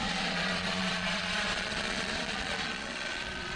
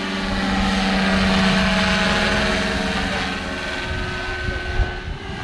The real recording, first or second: second